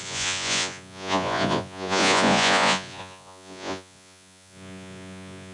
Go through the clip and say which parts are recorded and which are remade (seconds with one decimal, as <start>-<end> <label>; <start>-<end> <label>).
0.0-5.5 remade